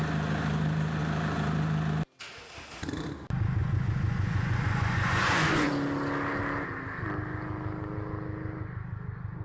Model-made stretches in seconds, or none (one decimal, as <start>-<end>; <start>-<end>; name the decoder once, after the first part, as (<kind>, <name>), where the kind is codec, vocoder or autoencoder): 3.6-5.7 (vocoder, Vocos)